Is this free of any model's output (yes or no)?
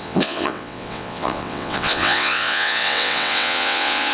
no